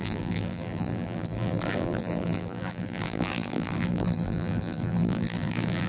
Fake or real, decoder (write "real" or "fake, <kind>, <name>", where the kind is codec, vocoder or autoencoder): fake, vocoder, BigVGAN v2